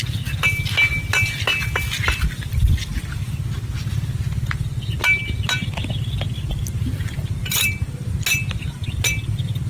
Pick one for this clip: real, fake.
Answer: real